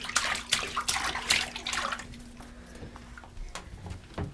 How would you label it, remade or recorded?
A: recorded